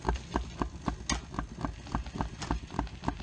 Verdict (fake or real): real